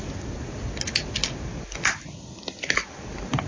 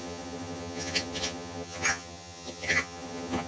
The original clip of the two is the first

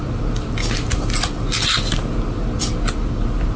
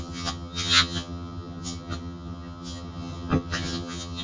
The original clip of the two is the first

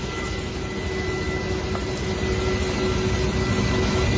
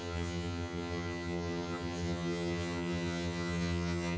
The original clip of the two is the first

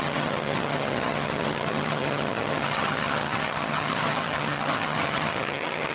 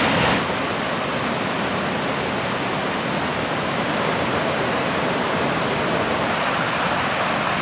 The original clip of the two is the second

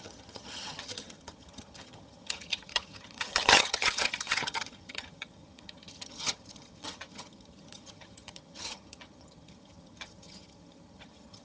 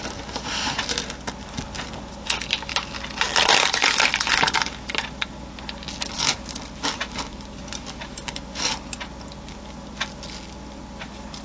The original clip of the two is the second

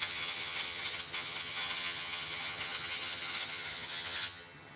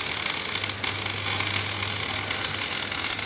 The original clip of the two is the second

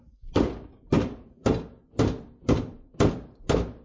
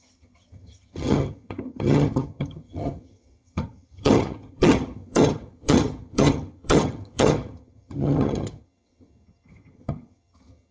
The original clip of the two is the first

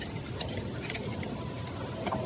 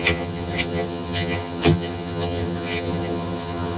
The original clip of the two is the first